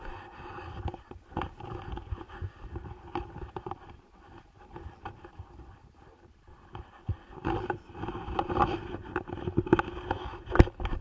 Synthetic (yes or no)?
no